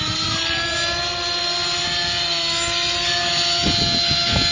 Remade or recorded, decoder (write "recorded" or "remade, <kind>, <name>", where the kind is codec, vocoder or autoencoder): recorded